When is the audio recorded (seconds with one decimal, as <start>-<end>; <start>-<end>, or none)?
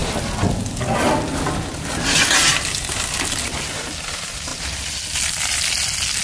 0.0-6.2